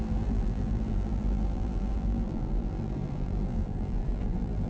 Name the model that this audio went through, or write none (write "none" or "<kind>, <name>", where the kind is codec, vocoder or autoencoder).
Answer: vocoder, BigVGAN v2